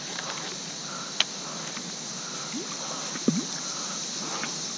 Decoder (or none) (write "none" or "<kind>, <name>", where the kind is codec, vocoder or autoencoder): none